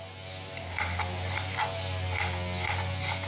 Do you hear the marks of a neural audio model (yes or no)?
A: no